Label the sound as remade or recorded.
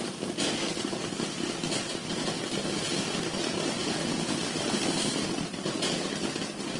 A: recorded